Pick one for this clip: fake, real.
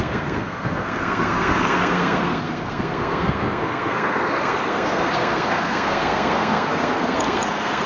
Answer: fake